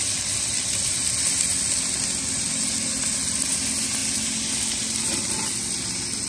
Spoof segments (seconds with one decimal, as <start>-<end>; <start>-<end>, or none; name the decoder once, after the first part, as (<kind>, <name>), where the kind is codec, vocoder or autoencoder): none